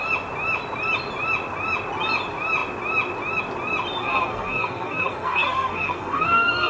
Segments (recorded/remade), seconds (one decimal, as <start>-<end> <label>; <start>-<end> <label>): 0.0-4.0 recorded; 4.0-6.7 remade